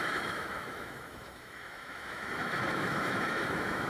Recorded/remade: remade